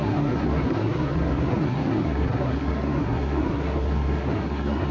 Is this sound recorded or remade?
remade